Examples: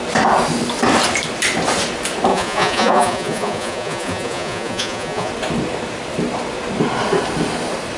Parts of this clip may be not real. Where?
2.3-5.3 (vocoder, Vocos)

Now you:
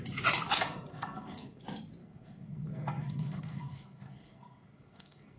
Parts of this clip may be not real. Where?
0.9-1.6 (codec, SNAC); 2.0-5.4